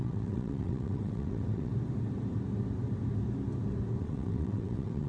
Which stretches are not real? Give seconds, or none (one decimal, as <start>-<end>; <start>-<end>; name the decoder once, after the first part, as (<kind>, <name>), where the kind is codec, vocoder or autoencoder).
0.0-1.7 (vocoder, WaveNeXt); 4.0-5.1